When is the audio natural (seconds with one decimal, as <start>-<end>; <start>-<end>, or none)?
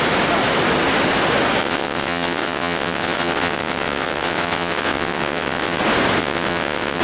0.0-1.6; 5.8-6.2